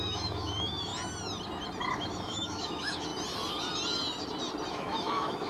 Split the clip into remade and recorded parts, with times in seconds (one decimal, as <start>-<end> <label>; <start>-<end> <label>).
0.0-0.9 remade; 0.9-1.8 recorded; 1.8-3.1 remade; 3.1-4.7 recorded; 4.7-5.5 remade